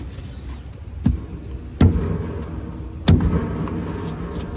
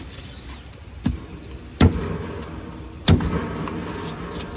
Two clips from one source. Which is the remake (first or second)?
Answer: second